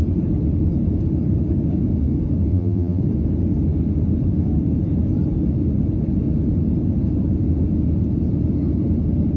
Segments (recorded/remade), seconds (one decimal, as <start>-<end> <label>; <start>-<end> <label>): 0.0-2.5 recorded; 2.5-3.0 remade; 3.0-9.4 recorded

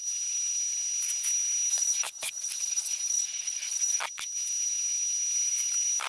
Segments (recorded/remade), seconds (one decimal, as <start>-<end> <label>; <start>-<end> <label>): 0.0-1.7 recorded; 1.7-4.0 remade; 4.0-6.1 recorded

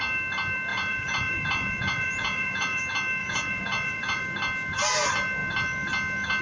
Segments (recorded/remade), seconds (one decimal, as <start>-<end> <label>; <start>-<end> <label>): 0.0-0.7 recorded; 0.7-2.8 remade; 2.8-3.2 recorded; 3.2-4.2 remade; 4.2-6.4 recorded

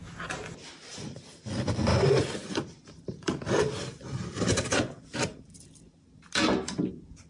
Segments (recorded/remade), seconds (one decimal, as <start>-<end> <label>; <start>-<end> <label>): 0.0-0.9 recorded; 0.9-1.5 remade; 1.5-1.9 recorded; 1.9-6.3 remade; 6.3-7.3 recorded